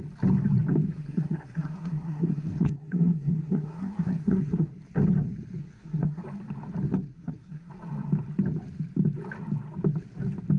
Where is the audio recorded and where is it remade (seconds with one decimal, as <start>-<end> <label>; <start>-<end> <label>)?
0.0-0.9 recorded; 0.9-4.7 remade; 4.7-5.6 recorded; 5.6-6.2 remade; 6.2-7.1 recorded; 7.1-7.7 remade; 7.7-10.6 recorded